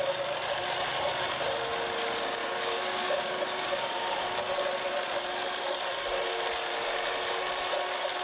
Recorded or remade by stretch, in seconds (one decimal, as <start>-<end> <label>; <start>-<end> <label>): 0.0-2.4 recorded; 2.4-4.5 remade; 4.5-8.2 recorded